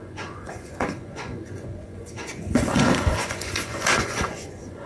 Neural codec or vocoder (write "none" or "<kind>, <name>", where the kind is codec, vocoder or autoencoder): vocoder, Vocos